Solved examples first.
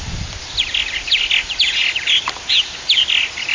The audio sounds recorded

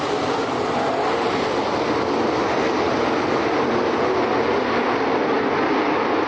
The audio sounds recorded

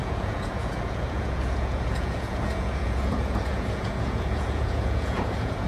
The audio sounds remade